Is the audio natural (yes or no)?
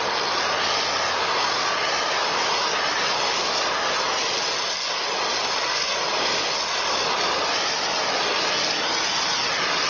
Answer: yes